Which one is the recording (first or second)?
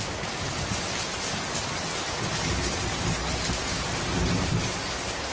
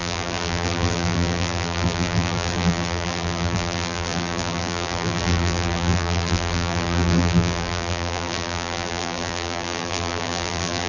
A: first